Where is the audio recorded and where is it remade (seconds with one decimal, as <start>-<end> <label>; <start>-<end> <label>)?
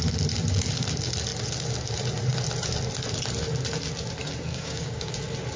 0.0-4.5 recorded; 4.5-5.1 remade; 5.1-5.6 recorded